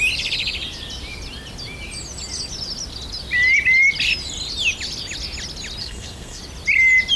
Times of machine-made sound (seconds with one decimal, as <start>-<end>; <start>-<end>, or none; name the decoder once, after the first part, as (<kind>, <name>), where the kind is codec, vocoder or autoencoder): 5.8-6.4 (codec, SNAC)